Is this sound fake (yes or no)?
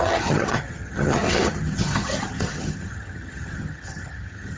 yes